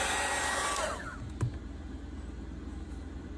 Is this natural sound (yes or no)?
yes